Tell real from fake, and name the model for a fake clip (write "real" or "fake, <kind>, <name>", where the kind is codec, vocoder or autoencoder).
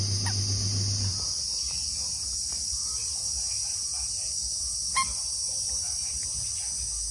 real